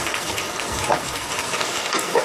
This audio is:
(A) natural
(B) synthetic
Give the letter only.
B